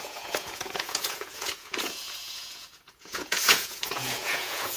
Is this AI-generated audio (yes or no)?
yes